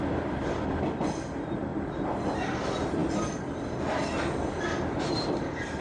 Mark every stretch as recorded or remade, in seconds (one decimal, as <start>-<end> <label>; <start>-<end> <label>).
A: 0.0-5.8 remade

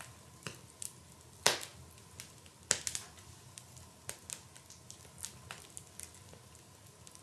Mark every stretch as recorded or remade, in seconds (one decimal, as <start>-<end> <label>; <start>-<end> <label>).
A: 0.0-7.2 recorded

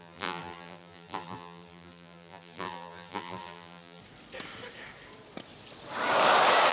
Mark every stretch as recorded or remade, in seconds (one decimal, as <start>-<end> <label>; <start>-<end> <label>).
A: 0.0-4.0 remade; 4.0-6.7 recorded

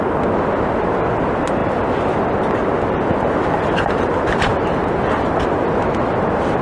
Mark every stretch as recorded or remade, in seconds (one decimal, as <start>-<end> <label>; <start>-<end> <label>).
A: 0.0-6.6 recorded

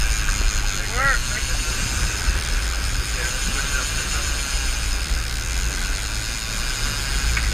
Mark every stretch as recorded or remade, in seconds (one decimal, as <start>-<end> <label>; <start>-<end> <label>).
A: 0.0-1.2 recorded; 1.2-5.1 remade; 5.1-7.5 recorded